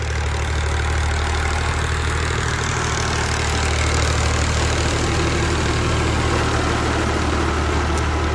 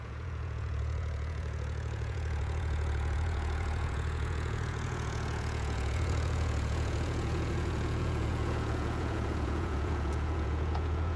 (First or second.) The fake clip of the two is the second